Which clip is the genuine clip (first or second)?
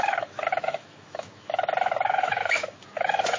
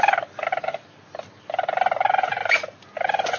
second